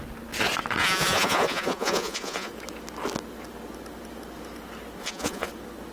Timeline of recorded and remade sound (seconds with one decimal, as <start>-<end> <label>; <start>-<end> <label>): 0.0-0.8 recorded; 0.8-2.5 remade; 2.5-5.0 recorded; 5.0-5.5 remade; 5.5-5.9 recorded